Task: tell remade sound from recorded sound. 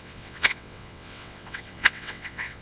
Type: remade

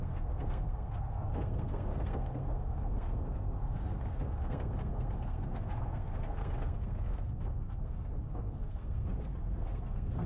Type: remade